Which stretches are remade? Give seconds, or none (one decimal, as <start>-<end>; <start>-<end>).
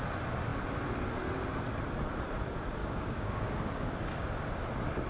2.8-4.3